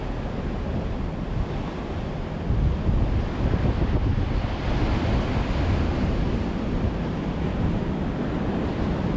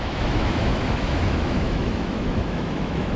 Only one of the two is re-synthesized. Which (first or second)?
second